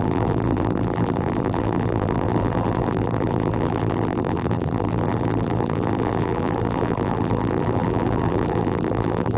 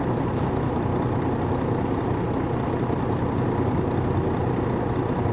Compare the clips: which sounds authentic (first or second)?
second